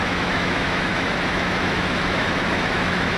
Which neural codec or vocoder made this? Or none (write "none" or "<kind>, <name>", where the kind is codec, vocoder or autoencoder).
autoencoder, DAC-VAE